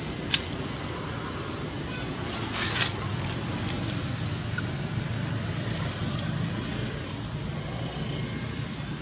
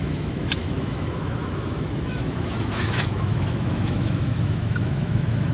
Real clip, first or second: first